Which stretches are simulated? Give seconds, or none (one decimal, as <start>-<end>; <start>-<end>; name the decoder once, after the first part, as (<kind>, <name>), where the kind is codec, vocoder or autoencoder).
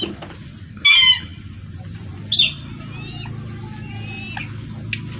none